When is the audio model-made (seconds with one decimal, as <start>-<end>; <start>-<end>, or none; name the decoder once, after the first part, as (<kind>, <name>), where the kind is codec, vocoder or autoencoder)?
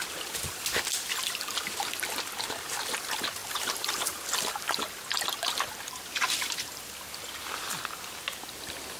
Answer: 3.4-8.0 (vocoder, BigVGAN v2)